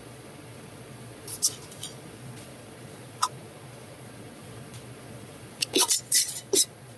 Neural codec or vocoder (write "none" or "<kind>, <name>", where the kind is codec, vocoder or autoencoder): vocoder, Vocos